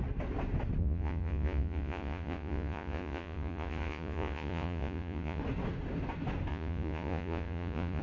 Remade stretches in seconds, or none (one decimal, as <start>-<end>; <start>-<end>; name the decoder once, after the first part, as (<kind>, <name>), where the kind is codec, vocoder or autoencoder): 0.8-5.4 (vocoder, Vocos); 6.5-8.0